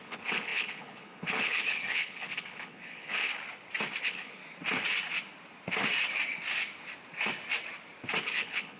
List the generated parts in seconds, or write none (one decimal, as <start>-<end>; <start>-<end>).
0.0-3.3; 4.0-4.4; 8.2-8.8